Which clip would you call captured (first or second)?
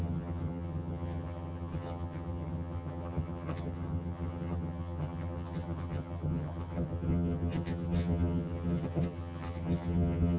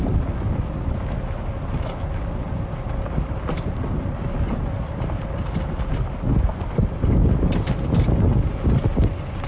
second